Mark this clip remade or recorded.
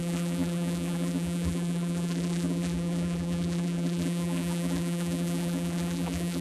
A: remade